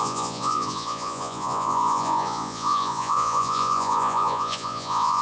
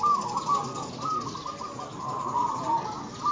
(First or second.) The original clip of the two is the second